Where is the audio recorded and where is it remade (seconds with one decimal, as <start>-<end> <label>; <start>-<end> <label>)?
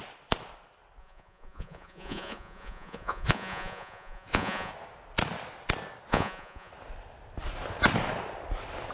0.0-1.0 recorded; 1.0-4.7 remade; 4.7-6.1 recorded; 6.1-6.7 remade; 6.7-8.9 recorded